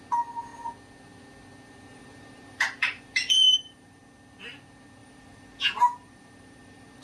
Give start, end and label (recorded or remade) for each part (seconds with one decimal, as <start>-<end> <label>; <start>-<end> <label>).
0.0-1.9 recorded; 1.9-4.0 remade; 4.0-5.0 recorded; 5.0-7.0 remade